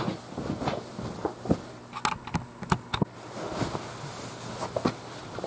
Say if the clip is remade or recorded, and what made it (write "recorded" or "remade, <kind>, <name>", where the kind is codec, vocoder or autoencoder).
recorded